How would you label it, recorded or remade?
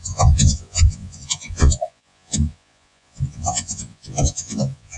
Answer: remade